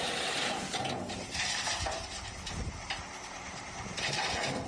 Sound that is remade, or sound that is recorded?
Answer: remade